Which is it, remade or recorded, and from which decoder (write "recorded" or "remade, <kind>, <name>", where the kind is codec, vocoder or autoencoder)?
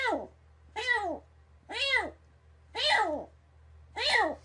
recorded